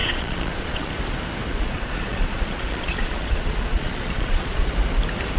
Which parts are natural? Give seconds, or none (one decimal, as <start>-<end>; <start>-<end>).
0.9-1.5; 4.7-5.4